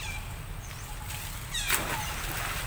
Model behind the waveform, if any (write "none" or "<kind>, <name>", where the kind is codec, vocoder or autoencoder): none